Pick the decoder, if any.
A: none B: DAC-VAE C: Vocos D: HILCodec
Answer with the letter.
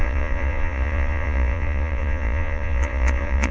C